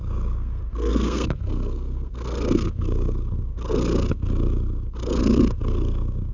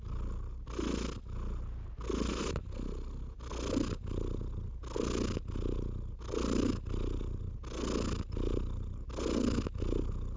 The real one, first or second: second